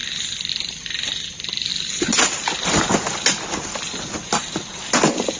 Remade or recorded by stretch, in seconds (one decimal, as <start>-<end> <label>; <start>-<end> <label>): 0.0-5.4 recorded